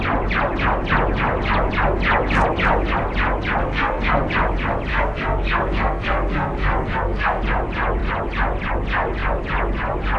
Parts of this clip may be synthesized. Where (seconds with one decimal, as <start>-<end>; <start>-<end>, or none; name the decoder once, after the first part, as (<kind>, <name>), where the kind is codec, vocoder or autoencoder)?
3.6-4.3 (codec, SNAC); 4.9-7.4